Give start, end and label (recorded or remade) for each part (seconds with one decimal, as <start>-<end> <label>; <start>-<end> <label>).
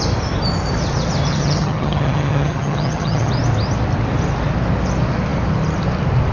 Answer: 0.0-1.3 recorded; 1.3-3.3 remade; 3.3-6.3 recorded